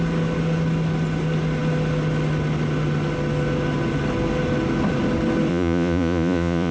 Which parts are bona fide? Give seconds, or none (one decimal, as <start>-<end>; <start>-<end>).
0.0-5.5